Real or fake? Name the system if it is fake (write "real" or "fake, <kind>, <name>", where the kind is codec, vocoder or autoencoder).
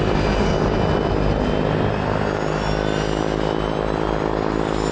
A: real